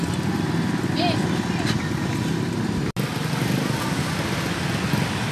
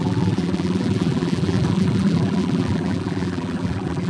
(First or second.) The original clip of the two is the first